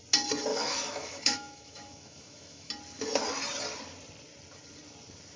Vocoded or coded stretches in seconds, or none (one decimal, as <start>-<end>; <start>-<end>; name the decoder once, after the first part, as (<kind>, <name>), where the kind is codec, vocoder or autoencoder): 0.5-2.7 (autoencoder, DAC-VAE)